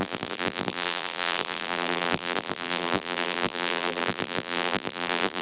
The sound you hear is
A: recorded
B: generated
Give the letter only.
B